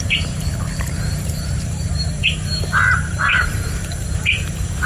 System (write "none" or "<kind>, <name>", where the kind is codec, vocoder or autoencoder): vocoder, BigVGAN v2